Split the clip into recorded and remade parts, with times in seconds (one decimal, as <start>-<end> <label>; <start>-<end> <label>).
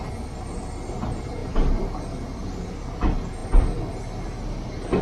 0.0-5.0 recorded